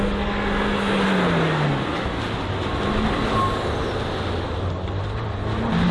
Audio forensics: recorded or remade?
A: recorded